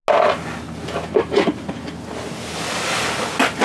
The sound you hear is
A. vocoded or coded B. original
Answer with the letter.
B